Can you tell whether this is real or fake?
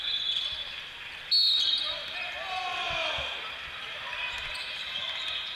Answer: real